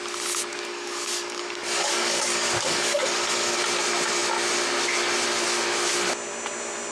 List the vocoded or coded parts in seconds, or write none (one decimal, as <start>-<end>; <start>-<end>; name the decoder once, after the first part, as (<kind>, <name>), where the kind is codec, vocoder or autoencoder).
0.5-3.6 (codec, DAC)